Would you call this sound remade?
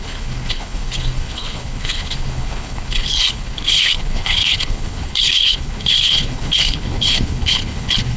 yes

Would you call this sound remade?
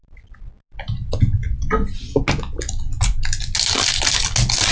no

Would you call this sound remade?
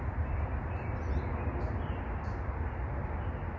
no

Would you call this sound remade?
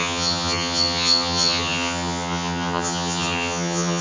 yes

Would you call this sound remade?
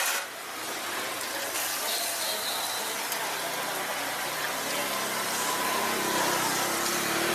no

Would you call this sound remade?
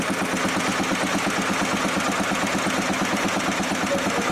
no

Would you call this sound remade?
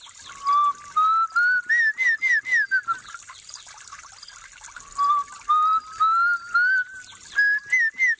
no